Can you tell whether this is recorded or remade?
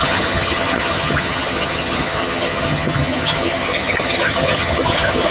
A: remade